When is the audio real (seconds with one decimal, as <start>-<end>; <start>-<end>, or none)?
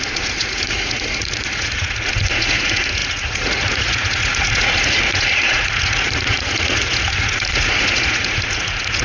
none